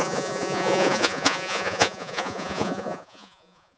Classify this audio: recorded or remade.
remade